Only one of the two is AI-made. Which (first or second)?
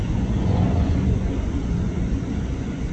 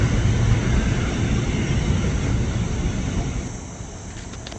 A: first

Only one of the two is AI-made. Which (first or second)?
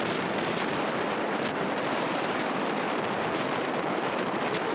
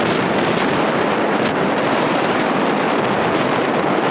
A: first